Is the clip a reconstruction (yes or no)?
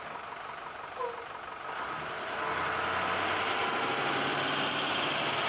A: no